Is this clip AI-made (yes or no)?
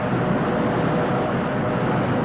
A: no